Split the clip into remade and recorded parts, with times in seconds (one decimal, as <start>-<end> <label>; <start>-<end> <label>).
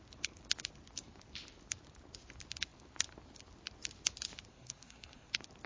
0.0-4.5 recorded; 4.5-5.3 remade; 5.3-5.7 recorded